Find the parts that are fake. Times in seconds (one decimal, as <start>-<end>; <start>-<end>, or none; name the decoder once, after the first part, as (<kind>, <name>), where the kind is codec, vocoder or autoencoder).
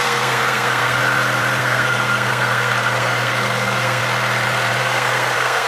0.0-1.0 (codec, SNAC); 1.6-4.0; 4.8-5.7